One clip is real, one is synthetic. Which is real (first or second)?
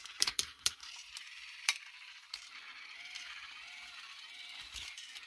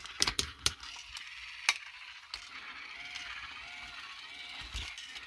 second